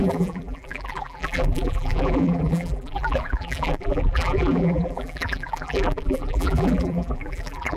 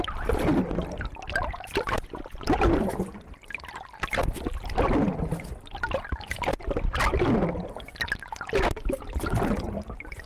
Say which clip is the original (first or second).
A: second